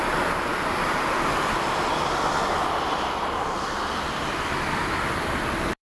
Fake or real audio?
fake